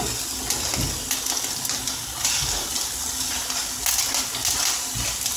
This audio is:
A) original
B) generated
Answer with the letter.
A